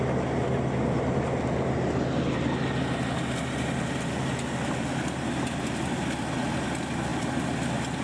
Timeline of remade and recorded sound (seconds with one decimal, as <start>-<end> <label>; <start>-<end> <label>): 0.0-8.0 recorded